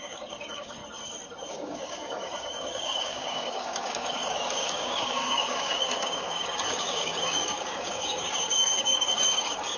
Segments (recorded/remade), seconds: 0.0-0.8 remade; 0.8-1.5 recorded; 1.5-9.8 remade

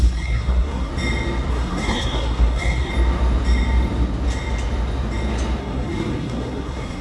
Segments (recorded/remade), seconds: 0.0-0.9 remade; 0.9-1.5 recorded; 1.5-2.9 remade; 2.9-5.6 recorded; 5.6-7.0 remade

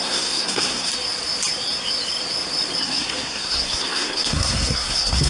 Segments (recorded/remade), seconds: 0.0-0.9 remade; 0.9-2.8 recorded; 2.8-5.3 remade

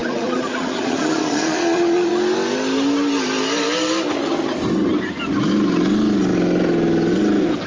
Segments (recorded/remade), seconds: 0.0-2.1 remade; 2.1-7.7 recorded

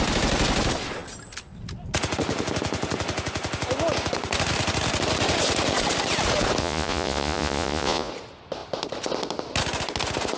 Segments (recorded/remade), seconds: 0.0-6.6 recorded; 6.6-8.1 remade; 8.1-10.4 recorded

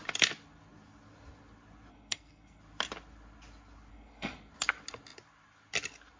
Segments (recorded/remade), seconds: 0.0-1.9 recorded; 1.9-2.6 remade; 2.6-3.9 recorded; 3.9-4.5 remade; 4.5-6.2 recorded